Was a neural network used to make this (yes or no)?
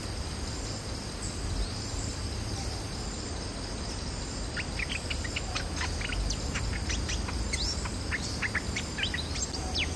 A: no